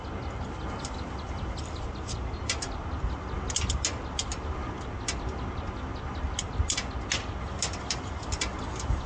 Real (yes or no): yes